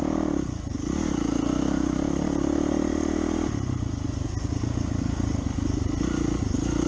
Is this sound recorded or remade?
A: recorded